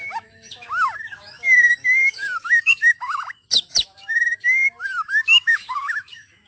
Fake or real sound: fake